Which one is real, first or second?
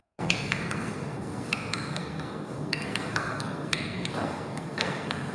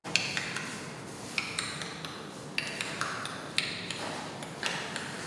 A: second